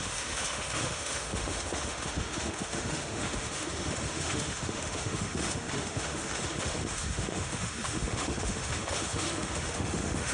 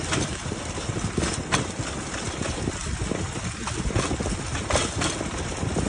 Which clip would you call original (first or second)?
second